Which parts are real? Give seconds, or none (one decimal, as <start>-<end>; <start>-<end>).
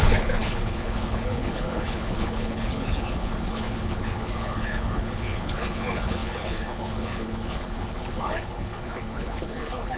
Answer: none